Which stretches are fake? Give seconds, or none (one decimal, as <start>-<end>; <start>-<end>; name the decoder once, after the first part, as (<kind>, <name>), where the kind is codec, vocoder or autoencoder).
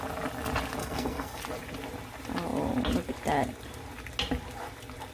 0.8-1.4 (codec, SNAC)